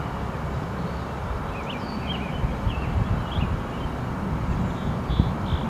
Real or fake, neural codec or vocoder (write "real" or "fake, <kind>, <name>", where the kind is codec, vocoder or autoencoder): real